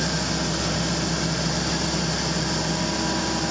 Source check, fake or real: real